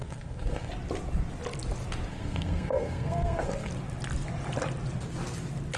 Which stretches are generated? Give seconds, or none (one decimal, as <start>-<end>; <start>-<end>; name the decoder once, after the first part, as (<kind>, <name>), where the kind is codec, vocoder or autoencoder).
0.0-0.7 (codec, SNAC); 2.1-3.7